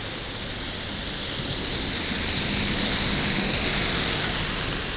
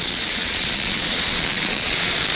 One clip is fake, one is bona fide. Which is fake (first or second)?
second